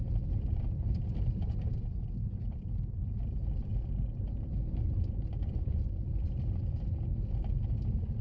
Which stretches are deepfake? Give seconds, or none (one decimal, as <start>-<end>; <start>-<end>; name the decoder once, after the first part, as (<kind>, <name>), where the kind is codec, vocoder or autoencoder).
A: none